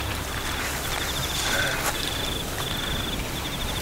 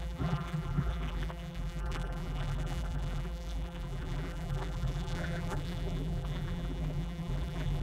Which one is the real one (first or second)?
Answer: first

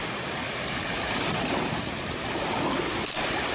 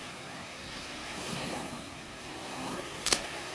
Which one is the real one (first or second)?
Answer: first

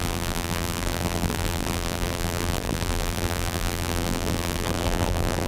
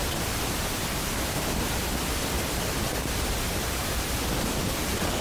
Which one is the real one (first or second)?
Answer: second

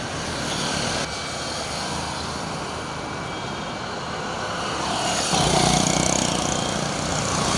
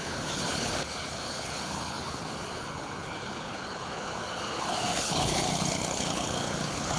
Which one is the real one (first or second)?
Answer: first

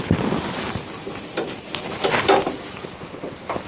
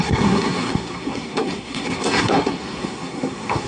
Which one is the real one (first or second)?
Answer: first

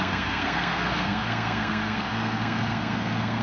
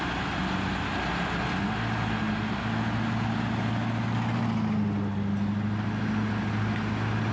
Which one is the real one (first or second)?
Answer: second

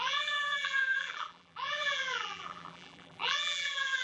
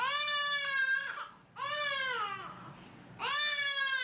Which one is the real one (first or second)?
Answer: second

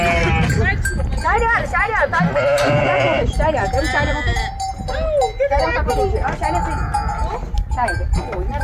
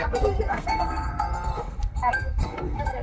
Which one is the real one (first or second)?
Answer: first